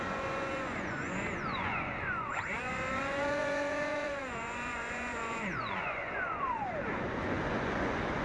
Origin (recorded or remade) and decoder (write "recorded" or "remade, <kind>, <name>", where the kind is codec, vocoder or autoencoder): remade, vocoder, Vocos